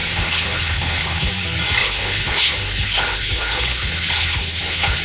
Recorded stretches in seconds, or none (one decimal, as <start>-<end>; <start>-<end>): 1.3-1.8